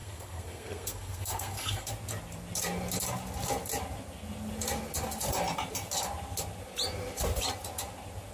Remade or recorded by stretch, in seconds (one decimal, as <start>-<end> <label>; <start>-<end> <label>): 0.0-1.9 remade; 1.9-8.3 recorded